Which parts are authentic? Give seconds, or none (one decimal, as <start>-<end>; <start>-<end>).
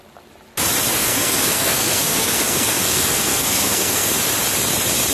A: 0.0-1.0; 4.1-5.1